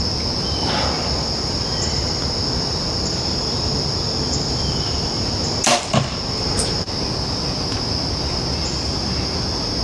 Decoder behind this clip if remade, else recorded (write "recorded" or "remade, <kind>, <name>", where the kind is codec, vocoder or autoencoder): recorded